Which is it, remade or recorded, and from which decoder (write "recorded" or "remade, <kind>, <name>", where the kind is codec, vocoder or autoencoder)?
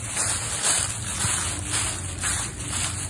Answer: recorded